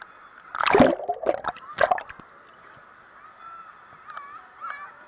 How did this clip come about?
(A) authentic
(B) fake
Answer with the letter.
A